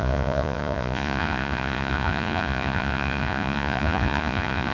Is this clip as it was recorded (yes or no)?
no